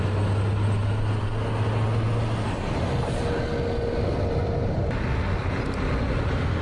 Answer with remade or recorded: recorded